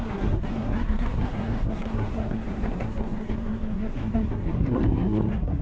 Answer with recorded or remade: remade